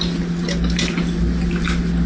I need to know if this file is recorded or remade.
recorded